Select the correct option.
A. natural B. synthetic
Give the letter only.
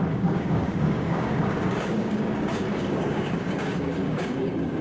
B